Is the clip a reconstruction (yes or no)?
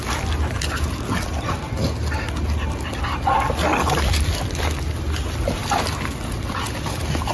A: no